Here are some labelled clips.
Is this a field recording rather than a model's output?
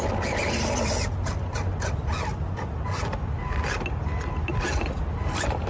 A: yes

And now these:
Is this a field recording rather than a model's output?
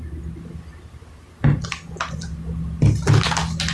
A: yes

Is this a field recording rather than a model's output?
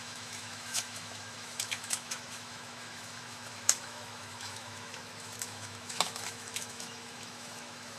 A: no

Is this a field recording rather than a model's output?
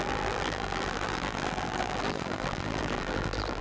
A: no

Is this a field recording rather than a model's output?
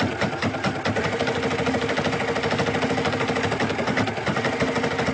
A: yes